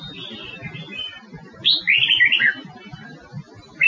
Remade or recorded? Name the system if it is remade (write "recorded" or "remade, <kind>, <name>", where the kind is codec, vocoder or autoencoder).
recorded